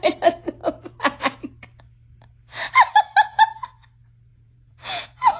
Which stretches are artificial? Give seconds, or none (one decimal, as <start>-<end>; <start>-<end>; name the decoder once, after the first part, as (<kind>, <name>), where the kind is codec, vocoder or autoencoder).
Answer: 4.3-5.4 (vocoder, Vocos)